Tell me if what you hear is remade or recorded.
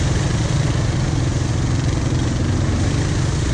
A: recorded